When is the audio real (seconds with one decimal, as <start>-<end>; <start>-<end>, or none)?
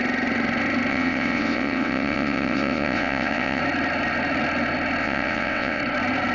0.0-0.9; 3.6-5.0; 5.8-6.3